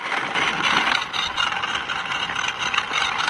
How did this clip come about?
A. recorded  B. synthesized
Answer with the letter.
A